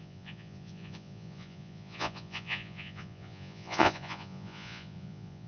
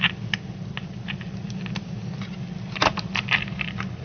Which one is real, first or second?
second